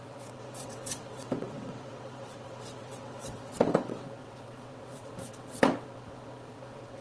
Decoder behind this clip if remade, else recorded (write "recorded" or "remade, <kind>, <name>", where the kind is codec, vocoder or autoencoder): remade, vocoder, WaveNeXt